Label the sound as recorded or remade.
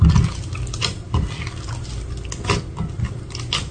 recorded